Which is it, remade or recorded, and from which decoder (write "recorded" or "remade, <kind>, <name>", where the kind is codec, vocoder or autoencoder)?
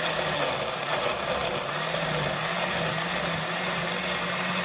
recorded